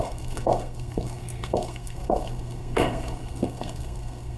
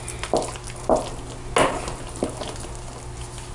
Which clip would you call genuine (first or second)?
second